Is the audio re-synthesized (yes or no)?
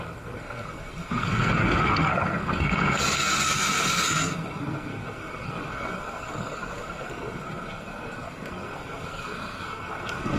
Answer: yes